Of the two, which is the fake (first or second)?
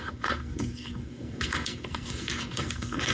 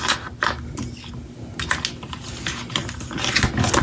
first